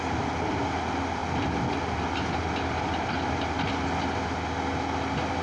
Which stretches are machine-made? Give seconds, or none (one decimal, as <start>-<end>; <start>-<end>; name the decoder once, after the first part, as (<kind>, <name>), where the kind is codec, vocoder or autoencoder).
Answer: none